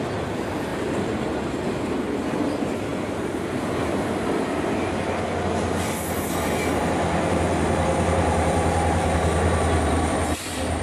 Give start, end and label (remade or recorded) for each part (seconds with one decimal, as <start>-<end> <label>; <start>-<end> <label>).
0.0-0.7 recorded; 0.7-2.1 remade; 2.1-6.8 recorded; 6.8-10.8 remade